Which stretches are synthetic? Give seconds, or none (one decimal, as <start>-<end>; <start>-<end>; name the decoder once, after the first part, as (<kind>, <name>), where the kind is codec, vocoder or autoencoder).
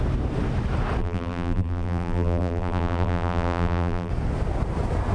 1.0-4.1 (vocoder, BigVGAN v2)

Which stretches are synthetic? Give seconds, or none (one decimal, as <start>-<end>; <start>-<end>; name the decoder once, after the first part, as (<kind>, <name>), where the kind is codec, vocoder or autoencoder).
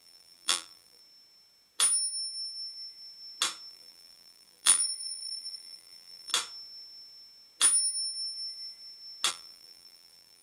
0.0-1.0 (vocoder, BigVGAN v2); 3.7-6.3; 9.3-10.4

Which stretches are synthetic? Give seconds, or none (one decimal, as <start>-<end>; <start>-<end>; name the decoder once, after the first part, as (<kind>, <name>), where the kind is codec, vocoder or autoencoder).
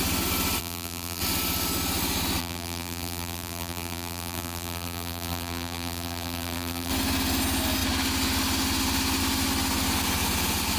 0.6-1.2 (vocoder, BigVGAN v2); 2.4-6.9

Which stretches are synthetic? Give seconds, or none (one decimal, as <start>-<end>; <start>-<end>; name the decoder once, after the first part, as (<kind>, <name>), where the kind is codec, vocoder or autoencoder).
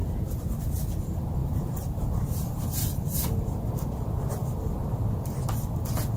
0.0-0.7 (vocoder, BigVGAN v2); 1.4-2.6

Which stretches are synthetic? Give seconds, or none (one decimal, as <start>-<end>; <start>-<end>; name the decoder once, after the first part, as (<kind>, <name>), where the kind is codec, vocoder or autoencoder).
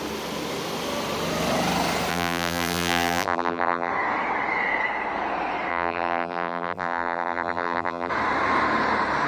2.1-3.9 (vocoder, BigVGAN v2); 5.7-8.1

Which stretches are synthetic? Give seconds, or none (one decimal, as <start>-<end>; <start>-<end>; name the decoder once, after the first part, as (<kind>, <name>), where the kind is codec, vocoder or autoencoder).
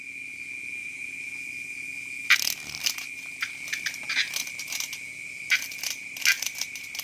0.8-1.3 (vocoder, BigVGAN v2)